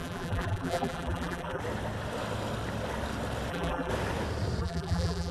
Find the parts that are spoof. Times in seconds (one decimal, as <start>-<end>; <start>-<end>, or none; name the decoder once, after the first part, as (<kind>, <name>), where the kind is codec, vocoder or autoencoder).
0.0-1.6 (vocoder, BigVGAN v2); 3.5-3.9; 4.6-5.3